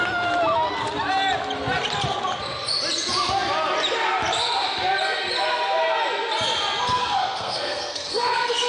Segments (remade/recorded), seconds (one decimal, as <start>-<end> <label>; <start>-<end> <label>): 0.0-7.0 recorded; 7.0-8.7 remade